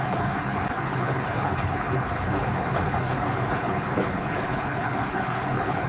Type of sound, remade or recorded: remade